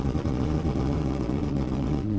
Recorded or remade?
remade